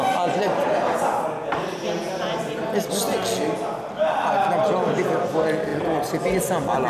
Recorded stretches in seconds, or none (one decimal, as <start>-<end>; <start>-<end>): 0.0-6.9